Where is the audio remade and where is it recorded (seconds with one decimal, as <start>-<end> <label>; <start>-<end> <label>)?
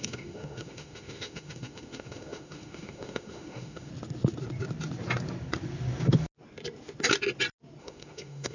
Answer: 0.0-3.9 remade; 3.9-7.8 recorded; 7.8-8.5 remade